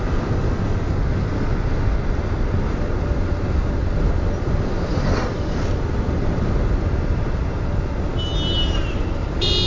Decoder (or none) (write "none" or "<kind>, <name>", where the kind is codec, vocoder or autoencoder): none